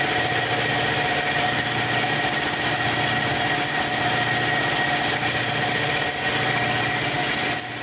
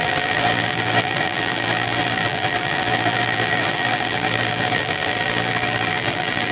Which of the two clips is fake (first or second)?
second